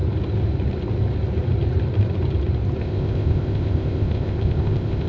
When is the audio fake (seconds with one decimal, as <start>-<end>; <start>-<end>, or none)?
2.8-5.1

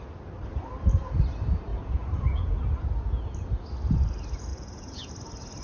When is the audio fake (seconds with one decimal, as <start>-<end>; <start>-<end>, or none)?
1.7-2.7; 4.5-5.1

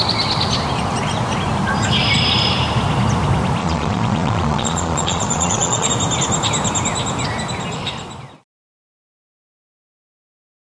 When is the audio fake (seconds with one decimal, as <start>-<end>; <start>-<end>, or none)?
3.6-5.9

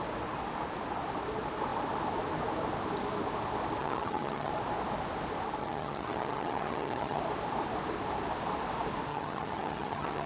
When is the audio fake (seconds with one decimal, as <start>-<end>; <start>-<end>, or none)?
3.8-4.5; 5.6-7.2; 9.1-10.3

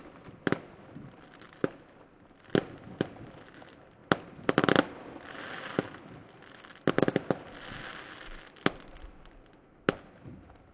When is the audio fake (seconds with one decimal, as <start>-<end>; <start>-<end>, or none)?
none

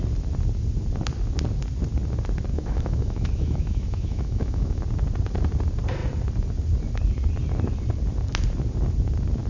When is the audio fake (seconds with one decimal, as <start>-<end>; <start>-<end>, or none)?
2.5-4.8

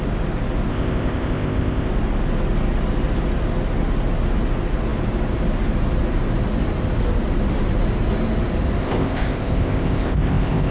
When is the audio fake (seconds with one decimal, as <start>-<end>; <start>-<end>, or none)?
0.7-1.9; 8.8-10.7

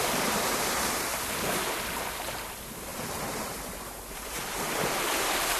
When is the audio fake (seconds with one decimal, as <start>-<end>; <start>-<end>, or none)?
0.0-1.1; 2.1-5.6